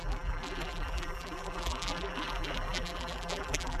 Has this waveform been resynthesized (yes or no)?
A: yes